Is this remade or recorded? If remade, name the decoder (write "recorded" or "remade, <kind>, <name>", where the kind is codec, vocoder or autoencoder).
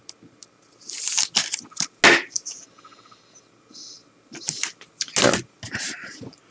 recorded